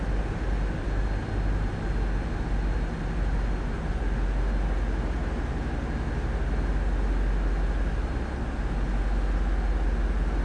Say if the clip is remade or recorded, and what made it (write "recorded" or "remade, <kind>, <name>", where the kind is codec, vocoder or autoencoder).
recorded